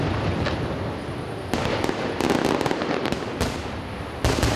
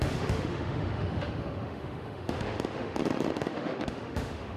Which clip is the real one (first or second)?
first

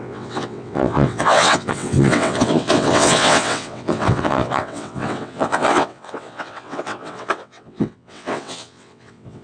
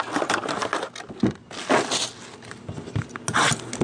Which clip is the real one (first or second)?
second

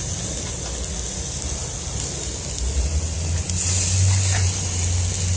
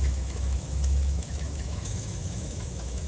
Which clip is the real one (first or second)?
first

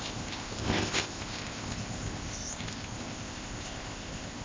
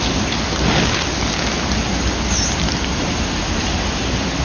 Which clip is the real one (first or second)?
second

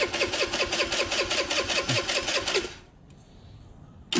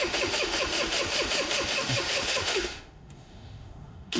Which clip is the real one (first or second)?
first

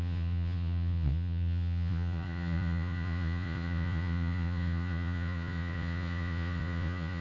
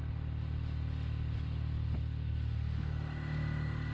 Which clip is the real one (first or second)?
second